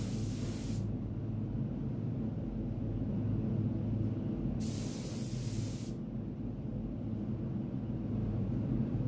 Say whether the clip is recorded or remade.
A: recorded